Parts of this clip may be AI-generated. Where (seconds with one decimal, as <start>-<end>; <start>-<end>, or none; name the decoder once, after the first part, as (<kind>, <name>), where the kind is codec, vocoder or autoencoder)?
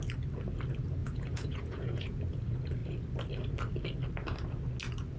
1.0-2.2 (vocoder, Vocos)